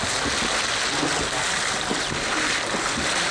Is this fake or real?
real